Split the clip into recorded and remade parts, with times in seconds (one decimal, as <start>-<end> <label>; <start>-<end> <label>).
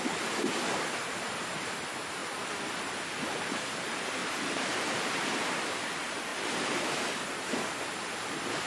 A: 0.0-4.2 recorded; 4.2-5.0 remade; 5.0-6.3 recorded; 6.3-7.0 remade; 7.0-8.7 recorded